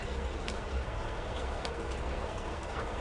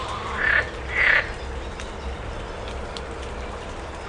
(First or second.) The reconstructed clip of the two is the first